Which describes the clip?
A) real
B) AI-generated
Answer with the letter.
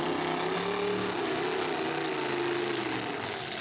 A